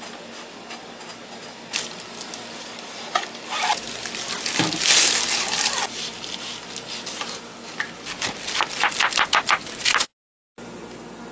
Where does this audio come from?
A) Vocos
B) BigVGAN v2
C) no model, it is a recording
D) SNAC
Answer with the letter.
C